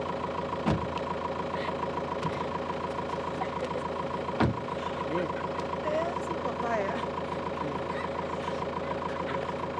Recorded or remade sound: recorded